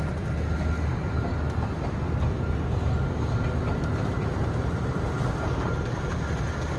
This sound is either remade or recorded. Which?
recorded